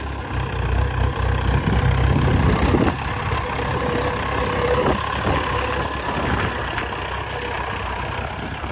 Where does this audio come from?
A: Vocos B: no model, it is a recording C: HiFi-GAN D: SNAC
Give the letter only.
B